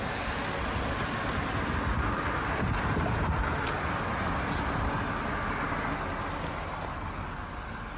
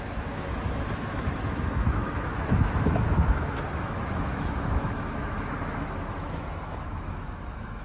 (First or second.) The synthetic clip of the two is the second